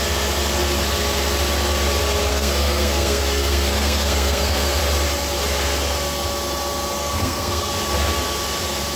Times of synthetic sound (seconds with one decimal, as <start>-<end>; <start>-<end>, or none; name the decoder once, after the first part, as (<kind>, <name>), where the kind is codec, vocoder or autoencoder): 2.3-4.8 (codec, SNAC); 7.0-7.7